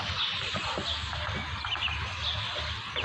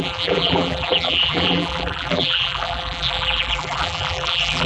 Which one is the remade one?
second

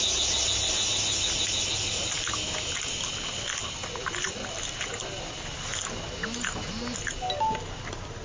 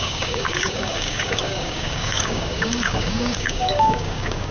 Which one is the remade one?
second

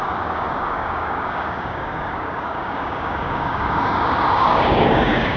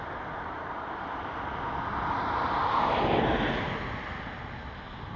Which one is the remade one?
first